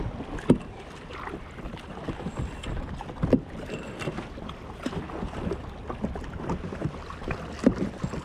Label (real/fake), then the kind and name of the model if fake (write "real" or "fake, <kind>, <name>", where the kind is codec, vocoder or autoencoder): real